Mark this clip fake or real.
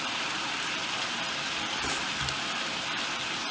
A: fake